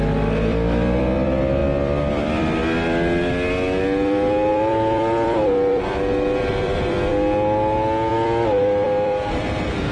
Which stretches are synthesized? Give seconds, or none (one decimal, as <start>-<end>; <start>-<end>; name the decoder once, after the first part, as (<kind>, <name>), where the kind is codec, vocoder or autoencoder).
0.0-2.6 (vocoder, BigVGAN v2); 4.5-7.1; 8.1-9.9